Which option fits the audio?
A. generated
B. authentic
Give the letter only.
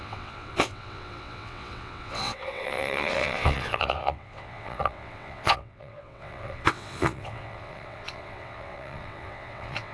A